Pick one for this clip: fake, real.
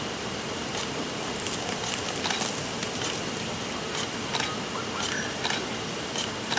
real